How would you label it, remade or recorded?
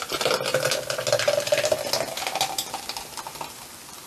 recorded